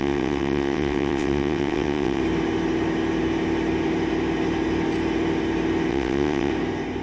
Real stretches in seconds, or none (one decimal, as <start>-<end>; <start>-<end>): 2.2-5.9; 6.5-7.0